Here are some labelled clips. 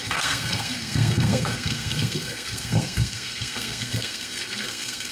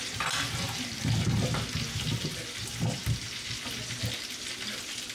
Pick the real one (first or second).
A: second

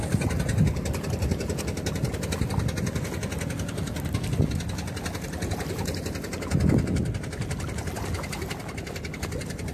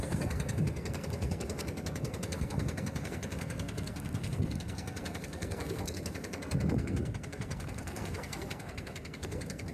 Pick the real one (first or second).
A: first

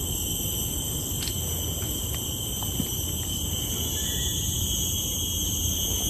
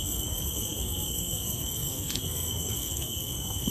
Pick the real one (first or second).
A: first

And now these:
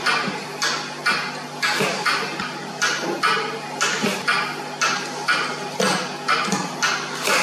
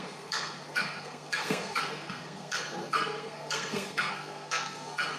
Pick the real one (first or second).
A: first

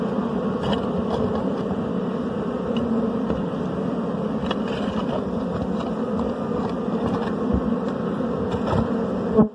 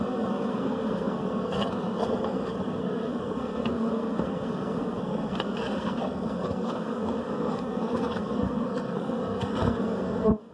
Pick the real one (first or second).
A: first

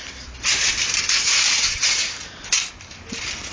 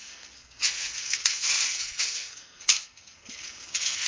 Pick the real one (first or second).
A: first